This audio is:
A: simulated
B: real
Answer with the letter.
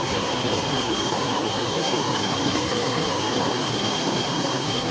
A